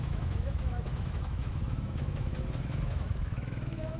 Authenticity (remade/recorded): remade